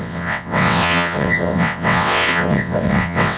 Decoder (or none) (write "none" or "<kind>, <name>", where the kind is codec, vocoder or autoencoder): vocoder, WaveNeXt